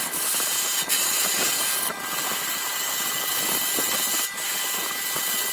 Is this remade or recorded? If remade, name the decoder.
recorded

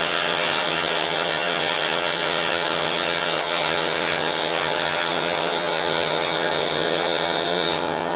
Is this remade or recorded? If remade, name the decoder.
remade, vocoder, HiFi-GAN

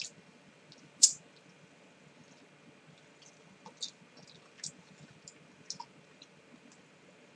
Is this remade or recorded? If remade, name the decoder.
recorded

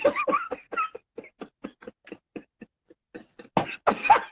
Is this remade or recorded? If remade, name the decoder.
recorded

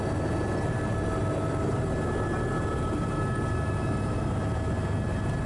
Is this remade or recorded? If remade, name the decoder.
recorded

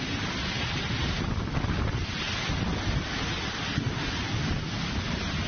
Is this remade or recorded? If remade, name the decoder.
recorded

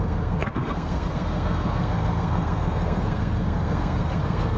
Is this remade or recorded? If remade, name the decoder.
remade, codec, SNAC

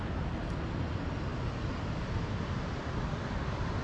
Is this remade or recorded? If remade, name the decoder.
recorded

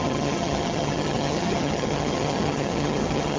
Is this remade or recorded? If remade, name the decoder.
remade, vocoder, HiFi-GAN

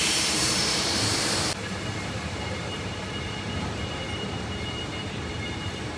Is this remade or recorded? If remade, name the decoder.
remade, vocoder, BigVGAN v2